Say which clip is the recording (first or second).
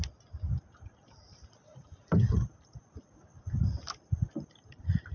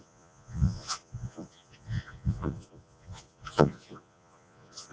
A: first